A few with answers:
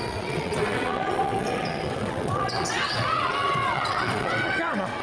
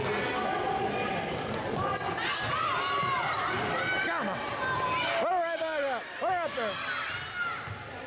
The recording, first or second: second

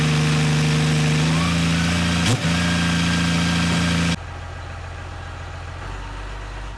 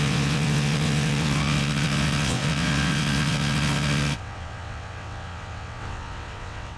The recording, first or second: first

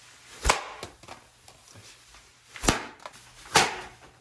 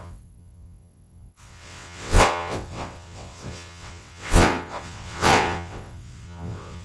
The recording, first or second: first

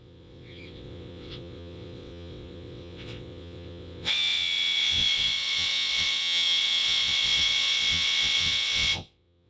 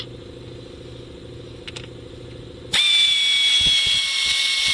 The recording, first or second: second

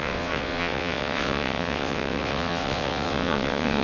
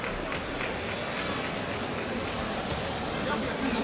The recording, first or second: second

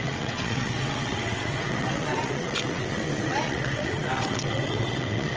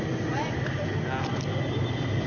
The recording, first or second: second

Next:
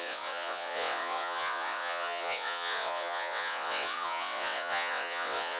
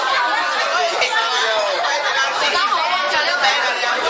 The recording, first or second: second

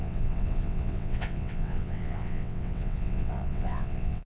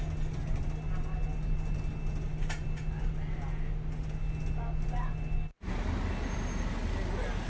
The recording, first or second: second